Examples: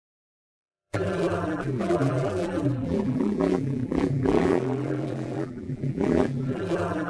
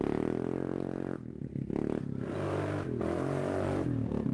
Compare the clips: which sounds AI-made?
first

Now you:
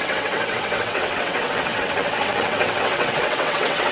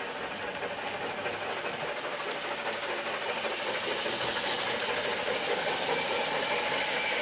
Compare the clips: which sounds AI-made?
first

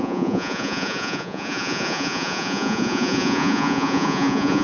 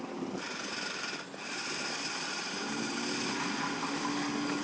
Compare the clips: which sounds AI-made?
first